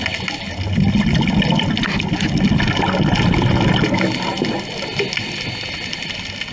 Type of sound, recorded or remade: recorded